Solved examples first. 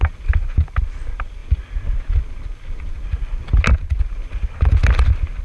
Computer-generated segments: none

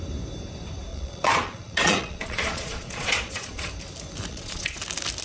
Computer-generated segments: 0.9-3.7 (vocoder, Vocos); 4.3-4.8